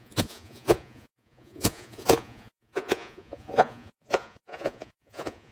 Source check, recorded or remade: remade